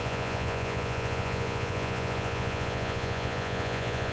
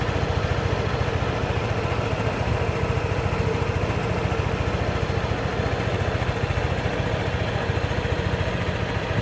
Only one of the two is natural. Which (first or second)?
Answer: second